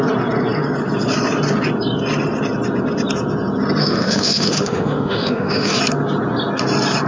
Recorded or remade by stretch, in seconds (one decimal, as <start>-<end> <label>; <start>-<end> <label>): 0.0-3.8 recorded; 3.8-5.8 remade; 5.8-7.1 recorded